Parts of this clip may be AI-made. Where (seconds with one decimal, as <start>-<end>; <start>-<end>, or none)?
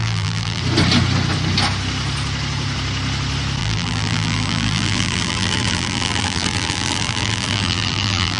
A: 0.0-0.6; 3.6-8.4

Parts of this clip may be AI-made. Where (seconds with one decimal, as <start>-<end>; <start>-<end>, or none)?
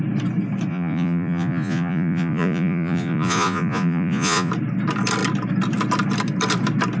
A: 0.7-4.5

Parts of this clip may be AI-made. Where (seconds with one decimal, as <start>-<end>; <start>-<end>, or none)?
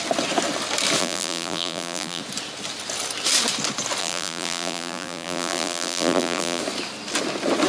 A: 1.0-2.2; 4.0-6.6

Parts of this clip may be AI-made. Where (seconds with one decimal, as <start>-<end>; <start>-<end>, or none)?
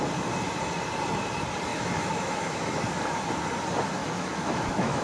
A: 1.7-3.0; 4.0-5.0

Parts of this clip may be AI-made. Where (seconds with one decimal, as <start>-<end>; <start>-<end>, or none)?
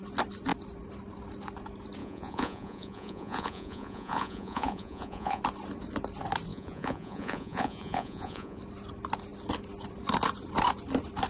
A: 2.0-5.4; 6.5-8.6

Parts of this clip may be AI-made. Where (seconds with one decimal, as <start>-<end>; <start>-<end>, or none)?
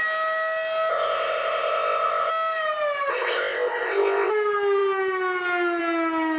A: 0.9-2.3; 3.1-4.3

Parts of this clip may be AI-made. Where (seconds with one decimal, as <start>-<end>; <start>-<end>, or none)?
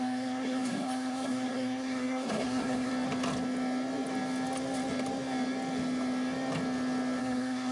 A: 0.0-2.9; 7.2-7.7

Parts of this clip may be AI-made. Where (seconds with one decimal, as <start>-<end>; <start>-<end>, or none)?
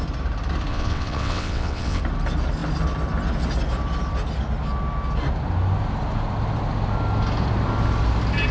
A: 0.7-2.0